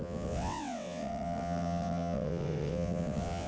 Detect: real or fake fake